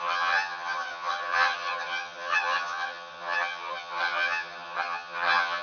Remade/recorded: remade